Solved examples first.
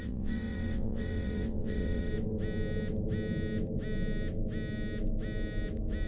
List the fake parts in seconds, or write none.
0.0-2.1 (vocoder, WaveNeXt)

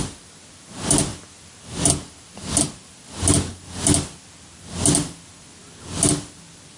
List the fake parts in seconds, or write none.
none